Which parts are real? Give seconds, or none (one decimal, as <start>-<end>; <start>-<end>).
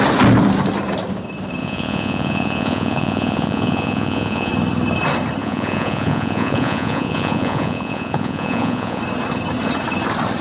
0.0-1.6; 4.5-5.4; 9.0-10.4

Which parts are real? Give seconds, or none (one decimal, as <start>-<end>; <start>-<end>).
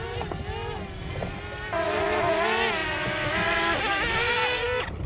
0.0-5.1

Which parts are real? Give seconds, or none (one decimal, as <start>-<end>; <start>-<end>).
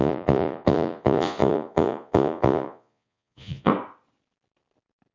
3.7-5.1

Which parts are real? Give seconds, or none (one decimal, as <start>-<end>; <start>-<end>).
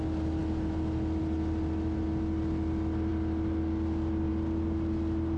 0.0-5.4